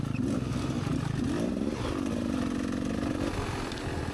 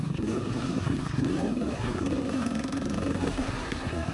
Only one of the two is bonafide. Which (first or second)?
first